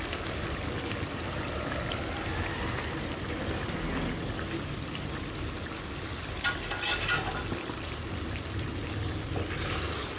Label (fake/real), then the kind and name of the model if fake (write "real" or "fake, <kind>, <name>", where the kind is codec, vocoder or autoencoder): real